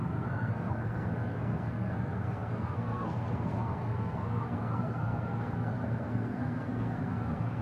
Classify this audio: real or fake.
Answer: fake